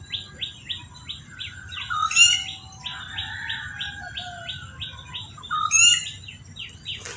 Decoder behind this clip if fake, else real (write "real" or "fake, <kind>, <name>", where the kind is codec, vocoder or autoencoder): real